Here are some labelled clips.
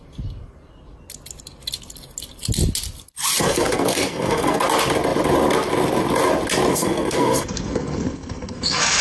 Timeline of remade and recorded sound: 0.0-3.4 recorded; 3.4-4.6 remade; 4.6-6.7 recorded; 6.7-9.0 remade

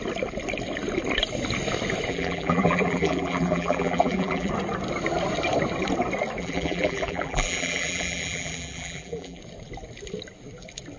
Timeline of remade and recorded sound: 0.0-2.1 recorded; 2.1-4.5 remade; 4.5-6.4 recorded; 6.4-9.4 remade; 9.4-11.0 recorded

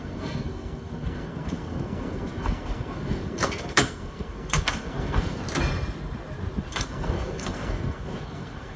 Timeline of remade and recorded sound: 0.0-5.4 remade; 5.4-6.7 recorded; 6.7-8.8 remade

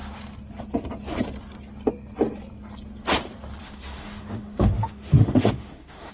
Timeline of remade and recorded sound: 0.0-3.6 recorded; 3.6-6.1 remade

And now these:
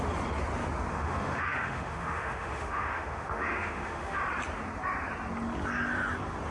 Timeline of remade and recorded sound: 0.0-0.9 recorded; 0.9-4.2 remade; 4.2-6.5 recorded

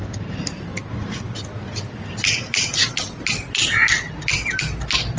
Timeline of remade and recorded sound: 0.0-5.2 recorded

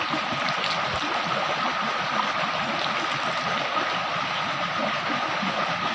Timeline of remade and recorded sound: 0.0-5.9 recorded